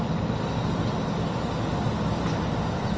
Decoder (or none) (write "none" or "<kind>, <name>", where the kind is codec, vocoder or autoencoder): none